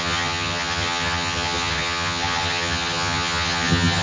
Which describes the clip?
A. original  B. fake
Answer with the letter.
B